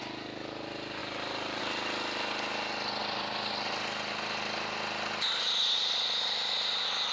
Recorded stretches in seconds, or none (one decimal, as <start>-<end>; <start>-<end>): 0.0-1.0; 1.6-3.0; 3.5-7.1